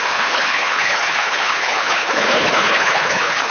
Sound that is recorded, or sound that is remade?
remade